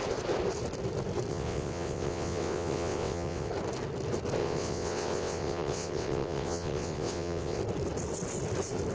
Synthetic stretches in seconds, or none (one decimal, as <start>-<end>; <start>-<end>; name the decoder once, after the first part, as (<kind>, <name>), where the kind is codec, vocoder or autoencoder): 1.3-3.5 (vocoder, WaveNeXt); 4.4-7.6